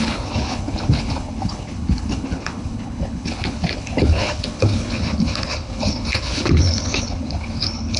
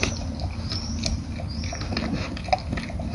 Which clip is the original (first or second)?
second